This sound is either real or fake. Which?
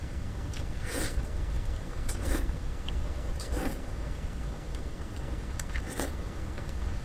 fake